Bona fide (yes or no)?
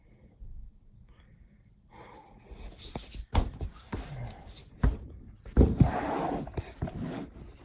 yes